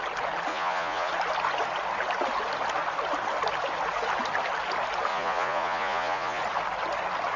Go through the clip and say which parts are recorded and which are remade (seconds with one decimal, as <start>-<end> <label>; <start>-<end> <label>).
0.0-0.5 recorded; 0.5-1.1 remade; 1.1-5.1 recorded; 5.1-6.4 remade; 6.4-7.4 recorded